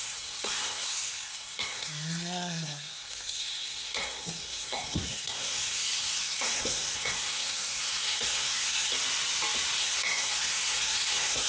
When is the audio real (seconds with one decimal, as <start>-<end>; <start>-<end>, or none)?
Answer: 8.9-9.8